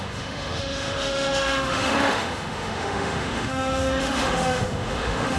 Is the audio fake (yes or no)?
yes